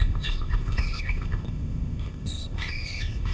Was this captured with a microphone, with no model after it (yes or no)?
no